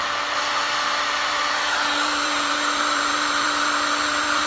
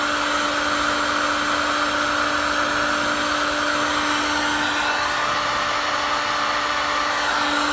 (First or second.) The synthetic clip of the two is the first